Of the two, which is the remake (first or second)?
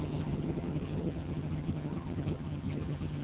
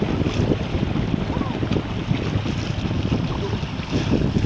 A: first